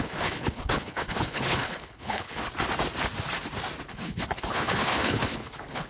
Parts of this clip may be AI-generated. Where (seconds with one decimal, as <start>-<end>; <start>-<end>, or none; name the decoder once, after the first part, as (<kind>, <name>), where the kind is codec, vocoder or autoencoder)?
0.0-2.4 (codec, HILCodec); 3.9-5.9